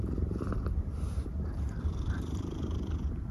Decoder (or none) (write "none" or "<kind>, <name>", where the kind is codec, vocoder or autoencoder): vocoder, BigVGAN v2